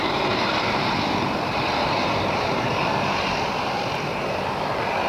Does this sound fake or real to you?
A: fake